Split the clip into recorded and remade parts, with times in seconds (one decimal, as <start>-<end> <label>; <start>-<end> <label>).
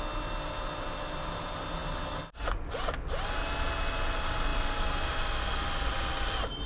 0.0-6.7 recorded